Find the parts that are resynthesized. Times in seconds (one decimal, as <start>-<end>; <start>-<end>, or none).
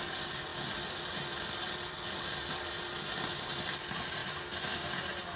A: 0.5-3.7; 4.2-5.0